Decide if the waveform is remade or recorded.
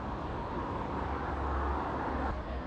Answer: remade